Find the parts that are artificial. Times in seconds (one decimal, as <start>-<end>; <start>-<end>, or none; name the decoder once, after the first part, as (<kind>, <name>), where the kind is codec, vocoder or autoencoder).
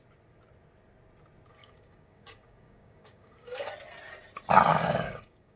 1.6-3.7 (codec, DAC); 4.7-5.6